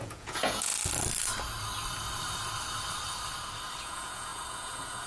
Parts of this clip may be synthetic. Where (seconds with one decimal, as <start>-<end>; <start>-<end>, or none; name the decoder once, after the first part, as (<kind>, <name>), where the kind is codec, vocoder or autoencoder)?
0.0-0.7 (vocoder, Vocos); 3.8-5.1